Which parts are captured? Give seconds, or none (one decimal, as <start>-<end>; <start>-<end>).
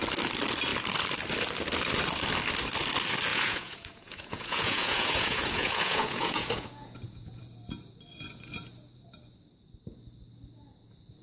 0.0-3.3; 7.4-11.2